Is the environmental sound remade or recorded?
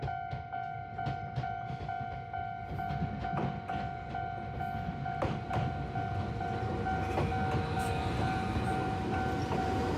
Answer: recorded